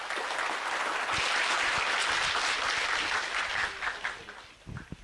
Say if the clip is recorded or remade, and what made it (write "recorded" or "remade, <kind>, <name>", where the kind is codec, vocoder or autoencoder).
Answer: recorded